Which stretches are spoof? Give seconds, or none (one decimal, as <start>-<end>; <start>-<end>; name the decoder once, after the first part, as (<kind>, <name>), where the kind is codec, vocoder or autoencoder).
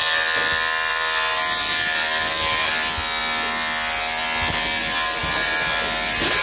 5.2-6.4 (vocoder, BigVGAN v2)